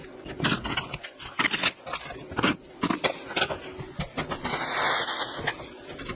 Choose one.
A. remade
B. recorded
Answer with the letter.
B